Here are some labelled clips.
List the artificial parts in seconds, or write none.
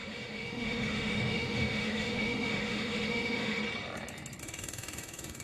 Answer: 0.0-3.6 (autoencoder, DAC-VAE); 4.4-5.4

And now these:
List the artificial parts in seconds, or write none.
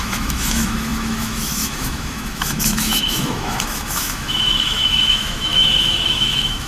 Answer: 0.0-6.7 (autoencoder, DAC-VAE)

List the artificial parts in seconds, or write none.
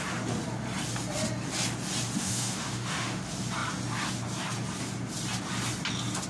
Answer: 2.2-3.2 (autoencoder, DAC-VAE)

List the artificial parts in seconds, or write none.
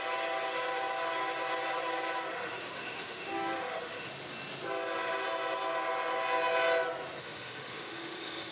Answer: 2.3-4.1 (autoencoder, DAC-VAE); 7.2-8.5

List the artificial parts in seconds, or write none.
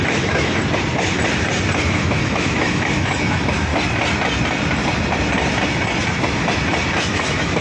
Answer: 0.0-0.6 (autoencoder, DAC-VAE); 1.9-3.7; 7.0-7.6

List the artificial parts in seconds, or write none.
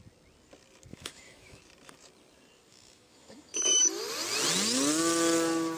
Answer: 0.9-1.6 (autoencoder, DAC-VAE); 2.7-4.0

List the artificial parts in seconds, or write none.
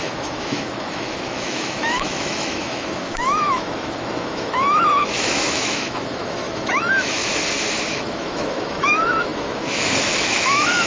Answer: 0.0-7.2 (autoencoder, DAC-VAE); 7.9-10.9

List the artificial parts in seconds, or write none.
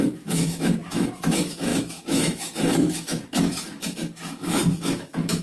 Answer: 0.0-5.4 (autoencoder, DAC-VAE)